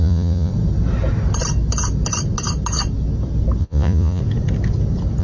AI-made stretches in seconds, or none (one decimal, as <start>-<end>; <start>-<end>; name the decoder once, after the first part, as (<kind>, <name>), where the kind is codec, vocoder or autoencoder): 0.0-0.5 (vocoder, Vocos); 3.6-4.2